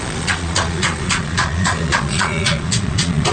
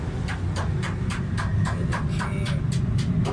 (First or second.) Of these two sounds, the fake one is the first